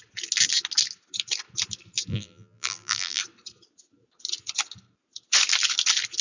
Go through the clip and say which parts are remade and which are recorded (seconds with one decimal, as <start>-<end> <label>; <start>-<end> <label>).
0.0-2.1 recorded; 2.1-3.2 remade; 3.2-6.2 recorded